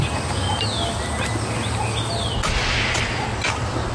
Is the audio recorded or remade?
recorded